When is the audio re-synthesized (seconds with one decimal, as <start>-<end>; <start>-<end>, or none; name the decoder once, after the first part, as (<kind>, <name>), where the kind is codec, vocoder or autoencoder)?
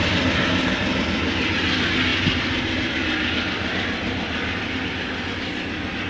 none